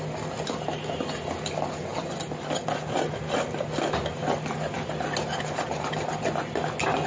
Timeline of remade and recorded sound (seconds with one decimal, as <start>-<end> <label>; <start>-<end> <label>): 0.0-7.1 recorded